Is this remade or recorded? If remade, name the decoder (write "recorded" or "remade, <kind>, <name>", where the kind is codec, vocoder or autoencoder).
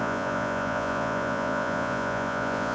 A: remade, vocoder, Vocos